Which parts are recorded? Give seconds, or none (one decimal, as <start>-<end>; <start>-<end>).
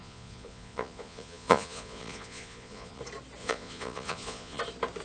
3.0-3.4; 4.6-5.0